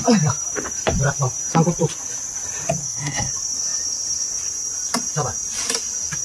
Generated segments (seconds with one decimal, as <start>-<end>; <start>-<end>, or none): 2.8-3.3